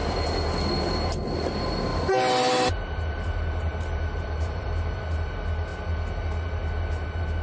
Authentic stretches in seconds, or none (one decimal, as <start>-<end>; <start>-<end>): 0.0-1.9; 5.0-7.4